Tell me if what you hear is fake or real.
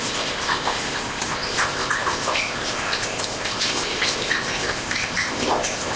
fake